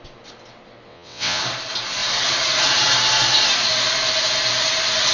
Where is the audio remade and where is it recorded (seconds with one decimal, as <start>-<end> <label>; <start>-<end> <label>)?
0.0-0.9 recorded; 0.9-1.4 remade; 1.4-5.1 recorded